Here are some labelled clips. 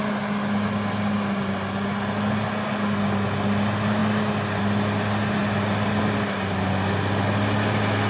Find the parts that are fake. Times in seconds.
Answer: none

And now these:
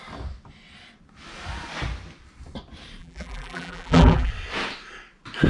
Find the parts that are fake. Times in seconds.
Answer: 3.0-4.3 (vocoder, BigVGAN v2)

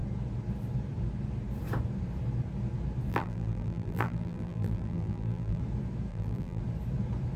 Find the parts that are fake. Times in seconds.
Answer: 3.1-5.6 (vocoder, BigVGAN v2); 6.1-6.6

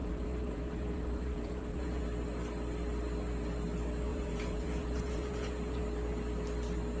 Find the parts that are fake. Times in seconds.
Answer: 0.0-2.0 (vocoder, Vocos); 4.1-5.8